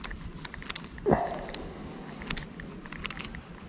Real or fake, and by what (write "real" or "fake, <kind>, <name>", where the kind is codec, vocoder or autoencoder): real